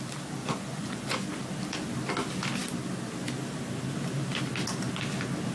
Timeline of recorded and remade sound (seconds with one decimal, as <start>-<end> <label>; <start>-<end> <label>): 0.0-0.4 recorded; 0.4-1.4 remade; 1.4-5.5 recorded